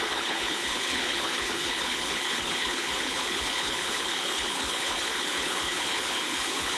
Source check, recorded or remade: remade